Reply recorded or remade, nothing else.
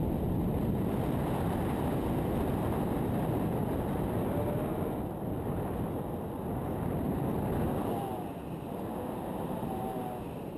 recorded